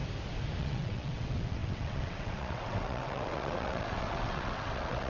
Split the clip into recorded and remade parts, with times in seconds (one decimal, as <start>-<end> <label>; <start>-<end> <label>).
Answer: 0.0-0.6 recorded; 0.6-5.1 remade